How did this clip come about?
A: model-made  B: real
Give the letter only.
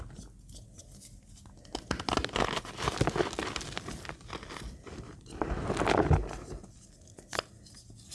B